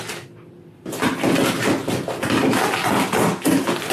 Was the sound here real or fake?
real